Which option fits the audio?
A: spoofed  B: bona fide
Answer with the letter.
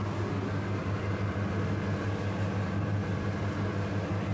B